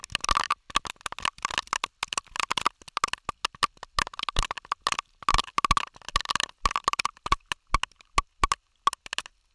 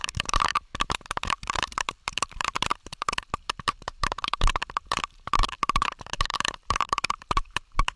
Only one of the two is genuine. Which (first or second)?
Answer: first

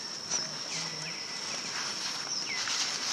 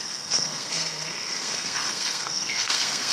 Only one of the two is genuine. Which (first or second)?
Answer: first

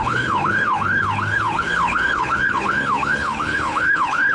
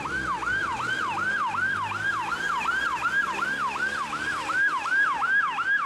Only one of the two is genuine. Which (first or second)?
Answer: second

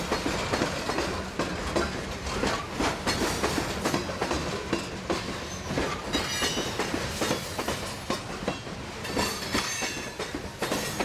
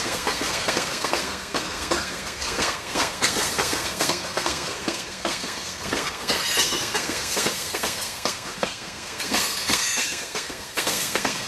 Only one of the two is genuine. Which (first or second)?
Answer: first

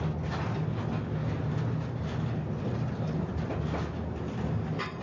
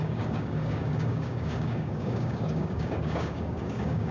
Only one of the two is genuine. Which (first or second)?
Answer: first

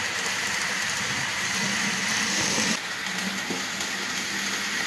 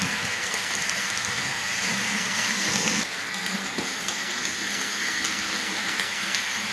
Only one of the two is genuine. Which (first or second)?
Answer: first